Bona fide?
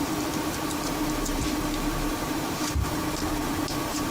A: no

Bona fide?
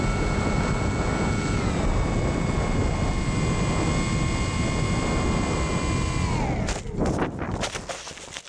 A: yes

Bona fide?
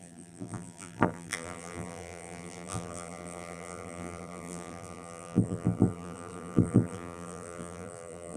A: no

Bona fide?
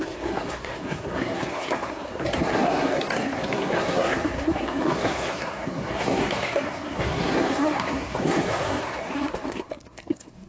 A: no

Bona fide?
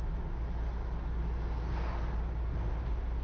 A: yes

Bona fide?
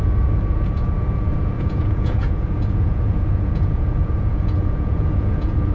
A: no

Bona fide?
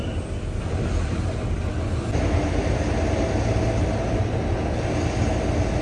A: yes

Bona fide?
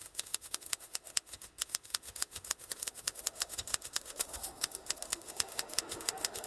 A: no